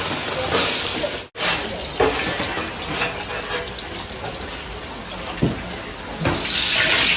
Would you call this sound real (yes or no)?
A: yes